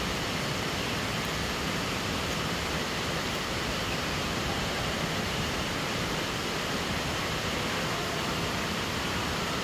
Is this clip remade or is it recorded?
remade